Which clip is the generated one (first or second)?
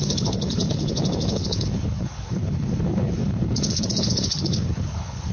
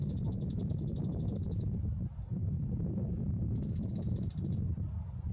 first